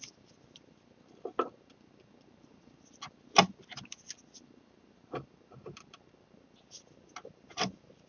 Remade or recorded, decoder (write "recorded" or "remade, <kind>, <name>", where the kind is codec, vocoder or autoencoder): recorded